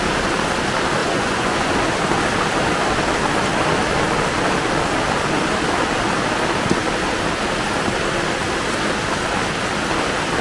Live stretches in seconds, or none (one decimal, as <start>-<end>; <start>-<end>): 0.0-1.0; 1.7-10.4